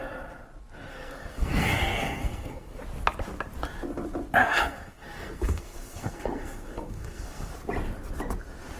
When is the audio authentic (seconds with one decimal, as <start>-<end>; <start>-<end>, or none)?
0.0-0.9; 2.8-4.4; 7.5-8.8